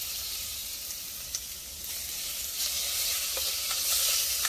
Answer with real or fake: fake